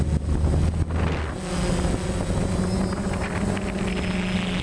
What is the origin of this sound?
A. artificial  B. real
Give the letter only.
B